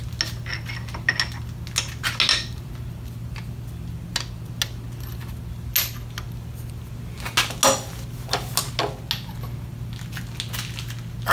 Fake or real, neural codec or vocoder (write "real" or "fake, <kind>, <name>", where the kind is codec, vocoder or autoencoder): real